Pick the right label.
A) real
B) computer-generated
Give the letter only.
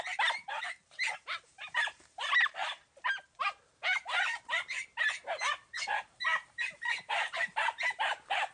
B